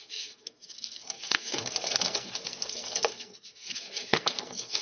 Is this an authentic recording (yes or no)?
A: no